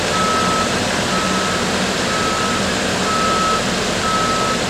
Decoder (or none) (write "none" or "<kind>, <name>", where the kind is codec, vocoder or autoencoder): none